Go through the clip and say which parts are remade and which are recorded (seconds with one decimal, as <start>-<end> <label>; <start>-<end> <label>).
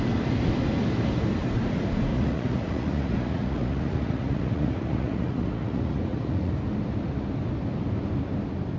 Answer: 0.0-2.1 recorded; 2.1-6.5 remade; 6.5-8.8 recorded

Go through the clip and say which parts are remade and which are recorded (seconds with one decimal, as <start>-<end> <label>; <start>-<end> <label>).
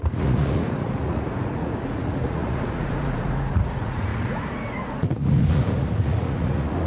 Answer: 0.0-6.9 remade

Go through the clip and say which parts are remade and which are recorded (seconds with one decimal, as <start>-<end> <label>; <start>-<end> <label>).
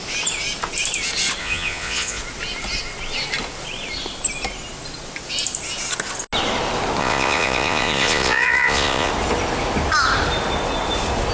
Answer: 0.0-1.4 recorded; 1.4-2.2 remade; 2.2-7.0 recorded; 7.0-9.1 remade; 9.1-11.3 recorded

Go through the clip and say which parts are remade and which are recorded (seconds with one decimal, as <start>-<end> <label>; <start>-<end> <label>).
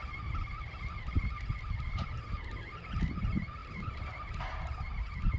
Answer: 0.0-5.4 recorded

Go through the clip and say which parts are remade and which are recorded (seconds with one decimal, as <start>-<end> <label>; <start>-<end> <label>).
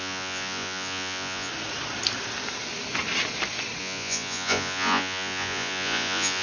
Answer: 0.0-1.5 remade; 1.5-3.8 recorded; 3.8-6.4 remade